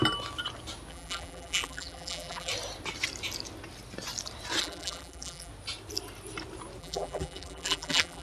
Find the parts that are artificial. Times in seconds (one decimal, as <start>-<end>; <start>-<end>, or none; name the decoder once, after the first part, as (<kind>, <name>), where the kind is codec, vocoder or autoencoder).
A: 0.9-2.5 (vocoder, BigVGAN v2); 4.6-5.5; 6.8-8.2